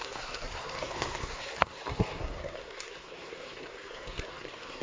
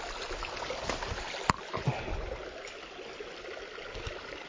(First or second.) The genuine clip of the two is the second